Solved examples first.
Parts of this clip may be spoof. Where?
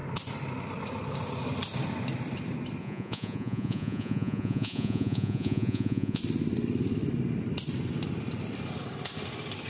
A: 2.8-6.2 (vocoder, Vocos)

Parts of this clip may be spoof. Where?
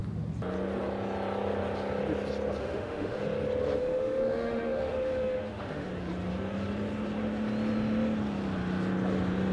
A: 2.6-3.2 (autoencoder, DAC-VAE); 3.8-5.9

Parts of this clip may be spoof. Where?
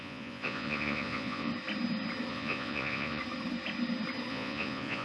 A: 0.0-1.5 (vocoder, Vocos); 2.3-3.2; 4.3-5.0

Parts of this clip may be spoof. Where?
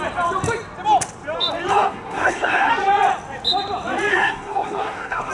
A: 1.7-2.7 (codec, SNAC); 4.1-5.3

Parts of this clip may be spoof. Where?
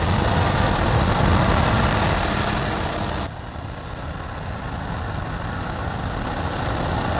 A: none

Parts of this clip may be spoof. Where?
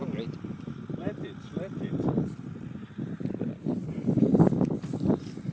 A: none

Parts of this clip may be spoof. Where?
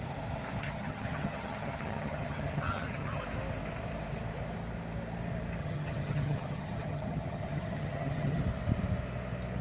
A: 0.6-3.2 (vocoder, HiFi-GAN); 5.6-8.4